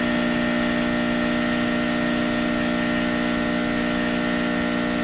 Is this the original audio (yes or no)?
yes